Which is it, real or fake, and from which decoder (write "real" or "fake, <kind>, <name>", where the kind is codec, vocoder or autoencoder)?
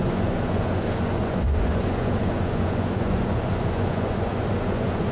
fake, vocoder, Vocos